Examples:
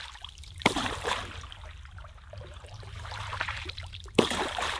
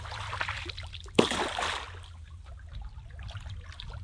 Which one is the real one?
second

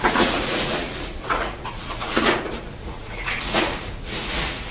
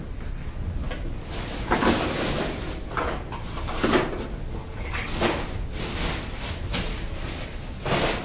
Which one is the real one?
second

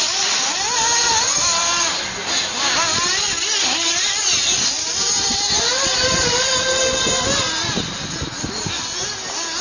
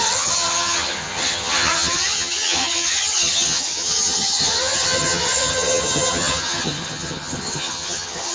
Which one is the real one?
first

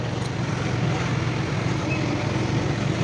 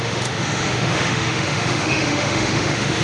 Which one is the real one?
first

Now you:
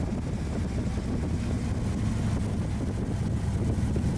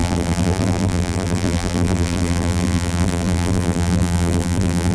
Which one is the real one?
first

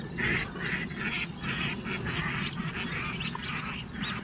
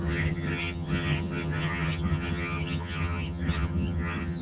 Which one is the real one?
first